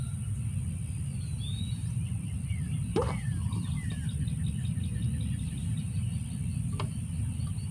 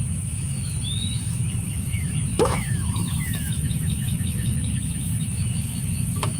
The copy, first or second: second